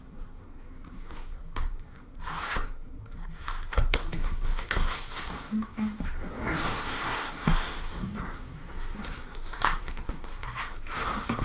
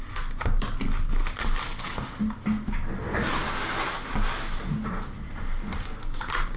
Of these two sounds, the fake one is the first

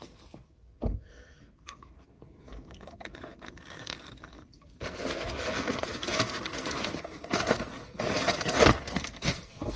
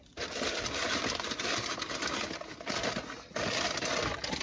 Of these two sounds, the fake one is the first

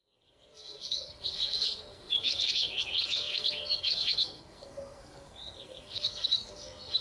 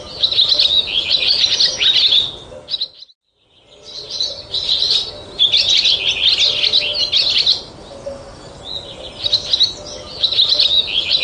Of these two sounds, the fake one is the first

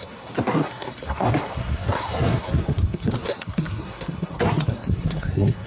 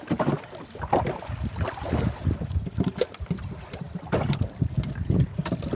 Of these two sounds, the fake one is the first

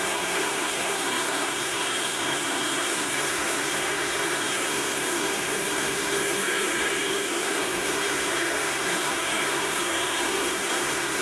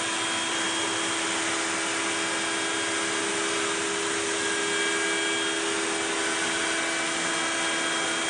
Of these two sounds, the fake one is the first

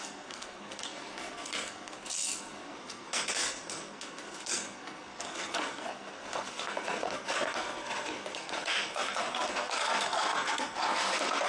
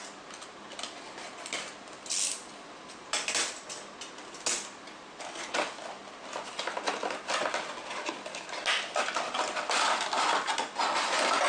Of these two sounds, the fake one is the first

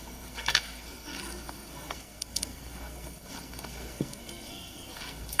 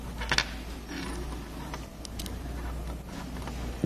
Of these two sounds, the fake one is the first